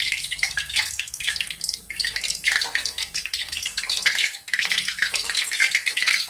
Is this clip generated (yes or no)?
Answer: yes